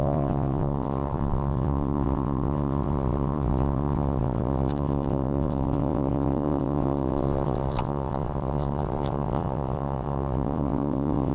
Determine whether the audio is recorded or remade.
remade